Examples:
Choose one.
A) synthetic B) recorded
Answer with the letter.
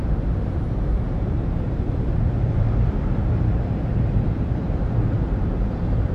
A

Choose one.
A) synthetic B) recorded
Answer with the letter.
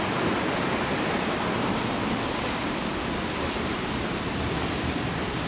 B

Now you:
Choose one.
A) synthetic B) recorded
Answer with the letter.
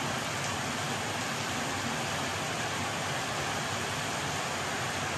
B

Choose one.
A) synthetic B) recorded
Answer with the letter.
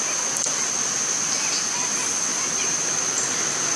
B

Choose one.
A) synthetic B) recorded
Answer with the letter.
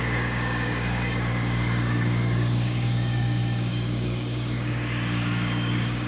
A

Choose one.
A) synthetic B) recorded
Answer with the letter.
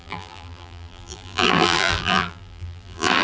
A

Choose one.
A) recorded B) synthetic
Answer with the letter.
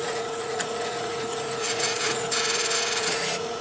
B